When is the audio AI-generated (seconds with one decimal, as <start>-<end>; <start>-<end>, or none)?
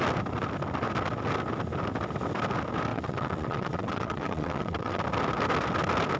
2.9-5.0